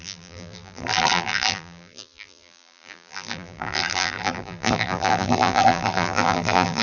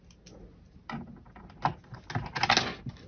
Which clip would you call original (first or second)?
second